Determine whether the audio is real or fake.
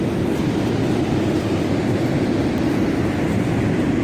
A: real